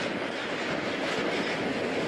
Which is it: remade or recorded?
recorded